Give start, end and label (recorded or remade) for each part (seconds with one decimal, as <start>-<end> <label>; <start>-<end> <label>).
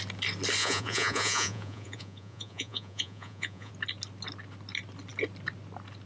0.0-0.6 recorded; 0.6-3.7 remade; 3.7-6.1 recorded